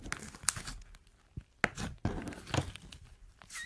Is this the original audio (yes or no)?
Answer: yes